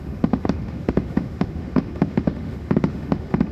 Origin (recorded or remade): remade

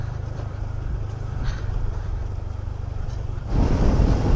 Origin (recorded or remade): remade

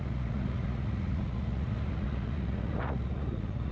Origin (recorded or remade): remade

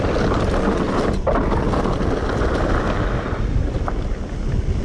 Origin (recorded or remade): recorded